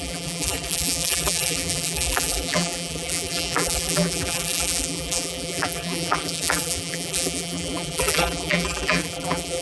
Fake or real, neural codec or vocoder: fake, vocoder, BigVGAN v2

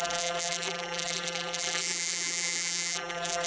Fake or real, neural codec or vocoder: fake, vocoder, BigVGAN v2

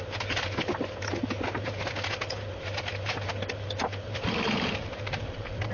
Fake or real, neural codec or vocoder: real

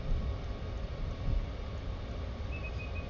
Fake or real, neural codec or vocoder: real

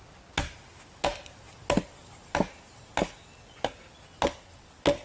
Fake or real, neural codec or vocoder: real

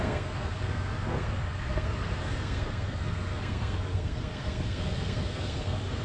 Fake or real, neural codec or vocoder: fake, codec, SNAC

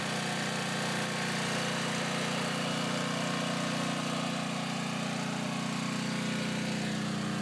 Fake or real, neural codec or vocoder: real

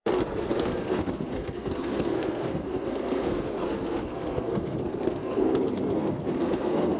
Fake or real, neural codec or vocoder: fake, codec, SNAC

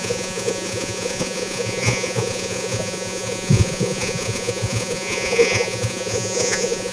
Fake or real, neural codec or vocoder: fake, vocoder, Vocos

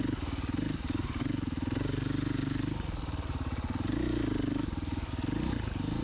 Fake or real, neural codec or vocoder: real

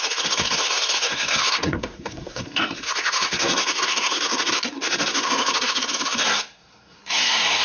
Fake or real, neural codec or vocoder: fake, codec, SNAC